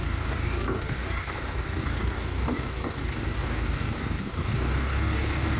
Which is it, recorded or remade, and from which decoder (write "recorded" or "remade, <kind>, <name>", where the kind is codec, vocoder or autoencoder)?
remade, codec, DAC